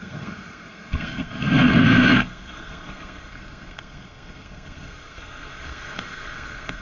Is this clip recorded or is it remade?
remade